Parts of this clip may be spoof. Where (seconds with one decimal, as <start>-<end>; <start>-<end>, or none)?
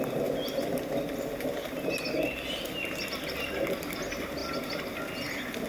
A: none